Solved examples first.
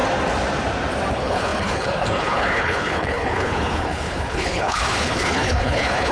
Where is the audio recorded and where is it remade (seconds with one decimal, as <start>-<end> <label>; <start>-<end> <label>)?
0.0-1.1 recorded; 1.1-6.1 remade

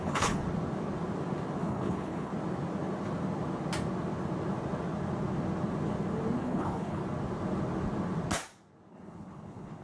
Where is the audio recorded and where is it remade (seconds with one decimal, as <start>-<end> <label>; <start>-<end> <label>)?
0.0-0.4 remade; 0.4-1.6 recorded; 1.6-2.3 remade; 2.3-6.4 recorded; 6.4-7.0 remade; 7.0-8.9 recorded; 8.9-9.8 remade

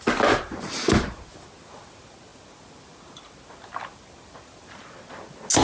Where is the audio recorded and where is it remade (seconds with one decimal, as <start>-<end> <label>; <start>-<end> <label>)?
0.0-5.6 recorded

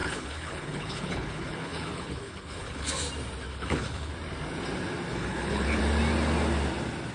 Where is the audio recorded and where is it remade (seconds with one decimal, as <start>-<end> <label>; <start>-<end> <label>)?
0.0-2.9 remade; 2.9-3.5 recorded; 3.5-4.1 remade; 4.1-5.1 recorded; 5.1-5.8 remade; 5.8-7.1 recorded